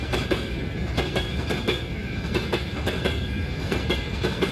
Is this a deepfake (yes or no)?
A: yes